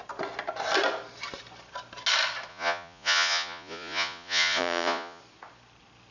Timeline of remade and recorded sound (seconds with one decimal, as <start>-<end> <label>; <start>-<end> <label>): 0.0-2.5 recorded; 2.5-5.2 remade; 5.2-6.1 recorded